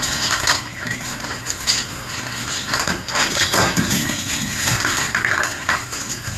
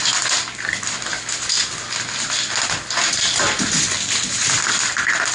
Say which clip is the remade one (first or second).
first